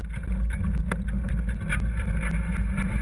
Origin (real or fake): real